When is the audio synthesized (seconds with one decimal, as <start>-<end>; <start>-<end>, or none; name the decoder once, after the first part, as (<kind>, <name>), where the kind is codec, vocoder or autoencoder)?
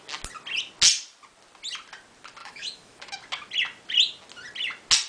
2.4-3.2 (autoencoder, DAC-VAE)